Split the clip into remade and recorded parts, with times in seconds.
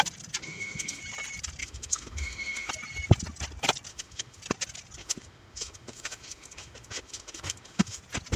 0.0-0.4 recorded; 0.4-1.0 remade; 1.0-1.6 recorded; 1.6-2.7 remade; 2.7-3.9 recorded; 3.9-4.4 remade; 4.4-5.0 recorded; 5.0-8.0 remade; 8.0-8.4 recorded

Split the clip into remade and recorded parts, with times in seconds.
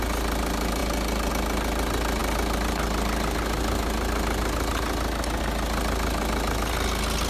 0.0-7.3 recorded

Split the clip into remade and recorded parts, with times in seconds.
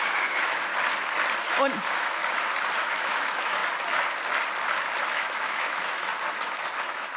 0.0-0.7 remade; 0.7-1.4 recorded; 1.4-2.2 remade; 2.2-2.8 recorded; 2.8-3.6 remade; 3.6-5.0 recorded; 5.0-6.1 remade; 6.1-6.8 recorded; 6.8-7.2 remade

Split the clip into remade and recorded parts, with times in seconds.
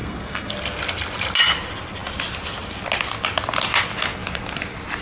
0.0-0.5 remade; 0.5-5.0 recorded